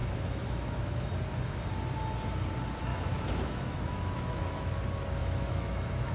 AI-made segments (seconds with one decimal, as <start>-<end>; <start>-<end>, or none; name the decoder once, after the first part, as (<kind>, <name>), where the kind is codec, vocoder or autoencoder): 0.0-1.1 (autoencoder, DAC-VAE); 2.9-4.7; 5.2-6.1